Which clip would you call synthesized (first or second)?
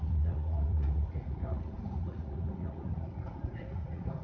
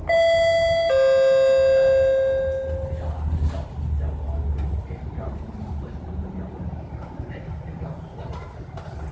first